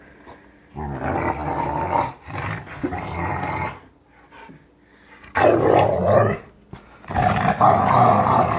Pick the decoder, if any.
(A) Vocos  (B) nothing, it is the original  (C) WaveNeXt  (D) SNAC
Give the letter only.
B